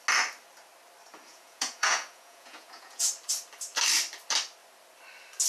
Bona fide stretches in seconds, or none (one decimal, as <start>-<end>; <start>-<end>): 0.0-1.3; 3.1-5.5